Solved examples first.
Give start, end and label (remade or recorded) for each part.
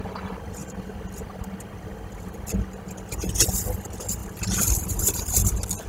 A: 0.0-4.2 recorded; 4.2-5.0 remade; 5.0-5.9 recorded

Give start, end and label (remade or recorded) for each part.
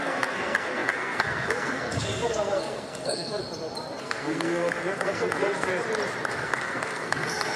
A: 0.0-3.4 remade; 3.4-4.0 recorded; 4.0-5.7 remade; 5.7-6.3 recorded; 6.3-7.6 remade